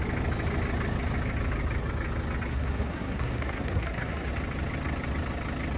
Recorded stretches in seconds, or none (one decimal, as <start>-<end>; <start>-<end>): 0.0-2.5; 4.3-5.8